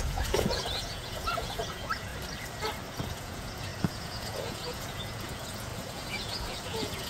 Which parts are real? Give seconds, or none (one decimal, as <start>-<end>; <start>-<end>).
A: 2.1-2.9

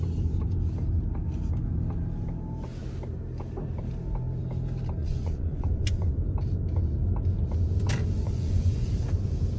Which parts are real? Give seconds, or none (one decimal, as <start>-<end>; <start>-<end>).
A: 0.0-5.0; 6.1-8.2; 8.9-9.6

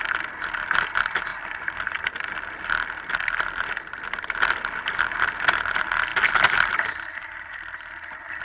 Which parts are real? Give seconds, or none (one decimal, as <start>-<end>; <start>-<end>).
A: 0.0-8.4

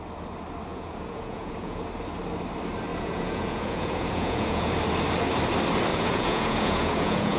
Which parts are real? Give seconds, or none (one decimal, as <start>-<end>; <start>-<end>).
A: 0.0-0.7; 1.8-2.9; 4.7-5.9

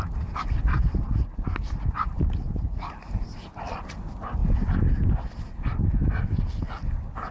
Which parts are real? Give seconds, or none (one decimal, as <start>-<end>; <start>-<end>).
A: 0.0-7.3

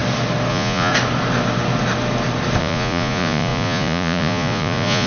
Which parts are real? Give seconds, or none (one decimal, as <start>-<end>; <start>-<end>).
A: 0.0-0.5; 0.9-2.6